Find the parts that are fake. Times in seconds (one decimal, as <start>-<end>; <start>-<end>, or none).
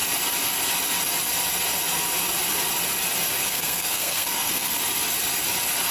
3.4-4.7